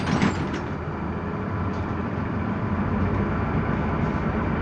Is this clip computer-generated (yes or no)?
no